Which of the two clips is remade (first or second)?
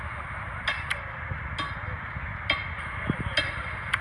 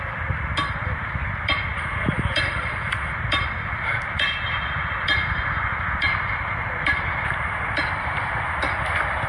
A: second